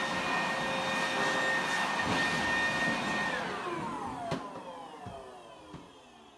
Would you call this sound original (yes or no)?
yes